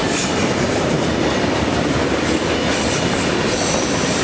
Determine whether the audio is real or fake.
real